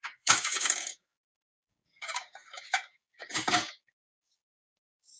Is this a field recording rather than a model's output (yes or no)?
no